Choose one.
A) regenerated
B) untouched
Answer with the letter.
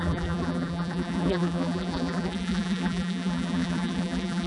A